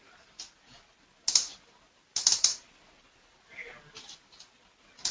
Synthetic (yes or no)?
no